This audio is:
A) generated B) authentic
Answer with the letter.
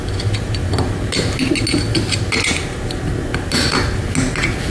B